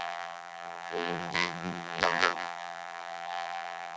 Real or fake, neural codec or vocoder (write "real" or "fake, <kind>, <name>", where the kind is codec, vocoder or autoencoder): fake, vocoder, BigVGAN v2